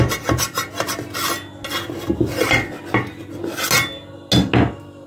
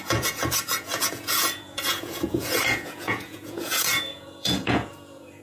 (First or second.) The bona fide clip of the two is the first